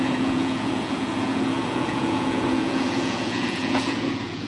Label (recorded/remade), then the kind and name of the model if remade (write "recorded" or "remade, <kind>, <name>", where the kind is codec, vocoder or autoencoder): remade, vocoder, Vocos